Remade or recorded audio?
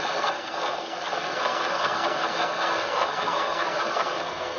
remade